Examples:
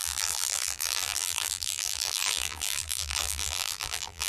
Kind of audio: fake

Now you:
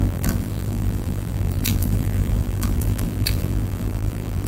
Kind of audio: fake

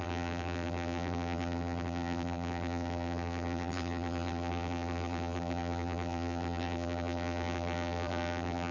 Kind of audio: fake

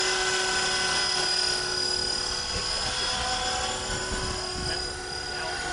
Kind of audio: real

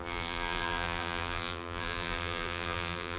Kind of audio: fake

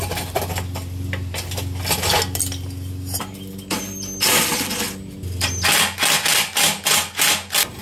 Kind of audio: real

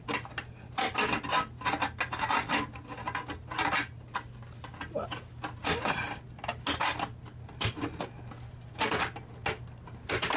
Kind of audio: real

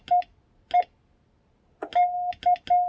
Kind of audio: real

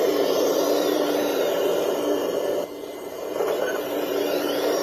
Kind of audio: fake